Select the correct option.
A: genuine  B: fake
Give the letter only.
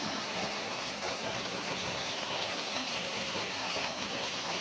B